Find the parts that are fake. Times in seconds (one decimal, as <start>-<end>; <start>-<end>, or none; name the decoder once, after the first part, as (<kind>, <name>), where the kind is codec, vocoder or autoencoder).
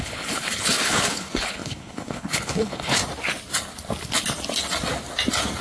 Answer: 0.0-3.0 (codec, HILCodec)